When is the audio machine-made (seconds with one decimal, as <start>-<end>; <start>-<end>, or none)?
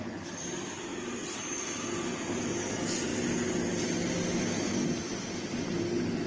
none